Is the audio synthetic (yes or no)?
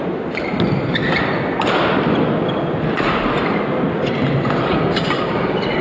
no